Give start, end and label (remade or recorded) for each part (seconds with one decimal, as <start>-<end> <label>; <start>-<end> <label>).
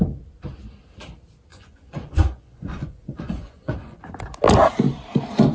0.0-1.5 recorded; 1.5-4.0 remade; 4.0-5.5 recorded